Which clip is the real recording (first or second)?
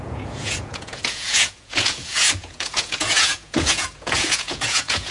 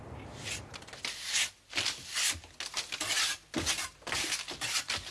second